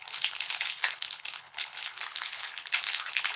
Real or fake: fake